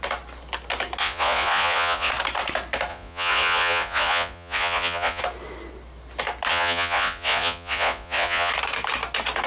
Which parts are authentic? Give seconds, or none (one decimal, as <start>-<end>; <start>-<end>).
0.0-1.0; 2.1-2.9; 5.2-6.5; 8.5-9.5